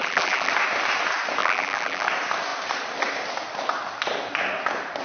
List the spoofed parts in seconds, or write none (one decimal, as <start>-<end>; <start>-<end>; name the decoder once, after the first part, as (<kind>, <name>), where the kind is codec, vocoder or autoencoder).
0.0-0.5 (vocoder, BigVGAN v2); 1.4-2.1